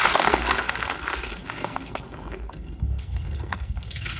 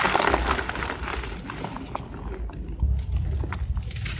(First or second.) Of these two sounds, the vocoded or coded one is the first